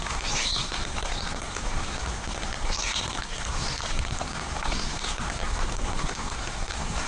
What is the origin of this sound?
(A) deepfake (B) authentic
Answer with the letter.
A